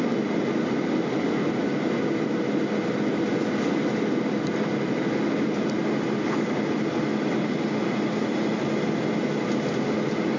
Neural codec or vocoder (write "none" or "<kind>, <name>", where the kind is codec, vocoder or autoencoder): none